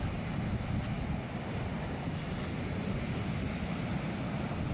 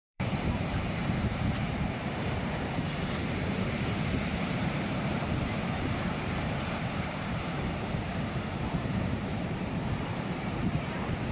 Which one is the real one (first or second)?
first